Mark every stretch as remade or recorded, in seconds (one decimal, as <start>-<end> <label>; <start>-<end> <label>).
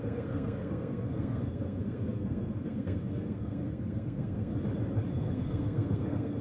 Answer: 0.0-4.5 remade; 4.5-5.1 recorded; 5.1-6.4 remade